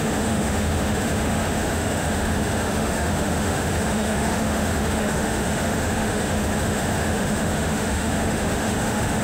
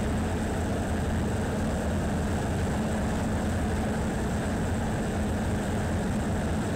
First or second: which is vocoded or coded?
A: first